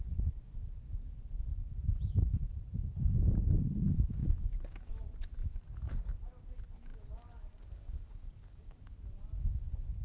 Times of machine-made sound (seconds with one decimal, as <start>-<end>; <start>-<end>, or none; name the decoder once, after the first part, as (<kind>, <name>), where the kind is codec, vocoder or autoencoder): 4.2-4.9 (codec, DAC); 6.9-8.9